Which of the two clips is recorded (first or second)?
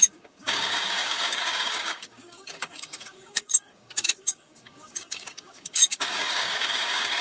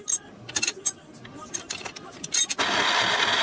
second